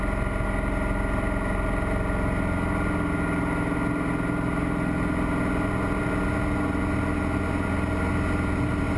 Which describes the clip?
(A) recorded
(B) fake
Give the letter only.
A